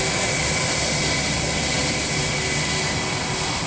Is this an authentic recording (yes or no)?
yes